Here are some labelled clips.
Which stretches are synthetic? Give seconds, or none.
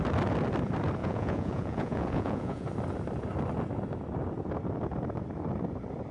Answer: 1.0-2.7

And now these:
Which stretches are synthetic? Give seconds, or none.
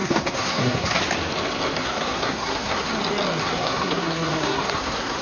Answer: 0.0-1.0; 1.8-2.9; 3.4-5.2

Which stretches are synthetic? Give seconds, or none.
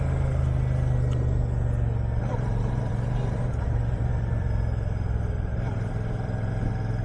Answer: 2.3-6.5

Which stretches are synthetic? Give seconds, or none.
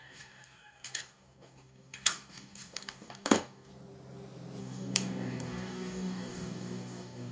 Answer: 0.0-3.7; 4.6-7.3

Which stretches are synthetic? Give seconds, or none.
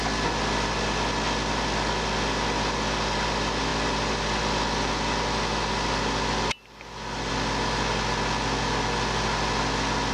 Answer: none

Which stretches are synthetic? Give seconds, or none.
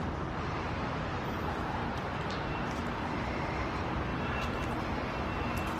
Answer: 1.8-2.7; 4.1-4.6